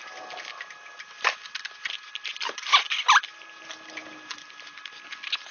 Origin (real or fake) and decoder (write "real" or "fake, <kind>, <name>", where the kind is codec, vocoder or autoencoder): real